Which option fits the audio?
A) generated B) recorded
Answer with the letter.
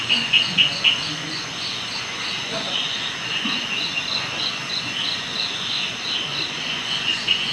A